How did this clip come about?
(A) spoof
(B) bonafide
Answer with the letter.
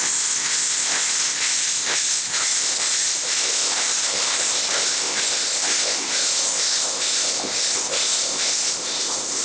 A